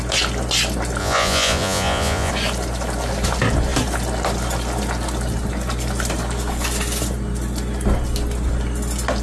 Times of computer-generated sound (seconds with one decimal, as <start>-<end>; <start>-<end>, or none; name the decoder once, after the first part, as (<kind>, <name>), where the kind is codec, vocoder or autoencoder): 1.0-2.3 (vocoder, Vocos)